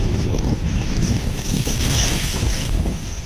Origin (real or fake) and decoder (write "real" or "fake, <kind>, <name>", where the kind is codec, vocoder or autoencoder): fake, codec, DAC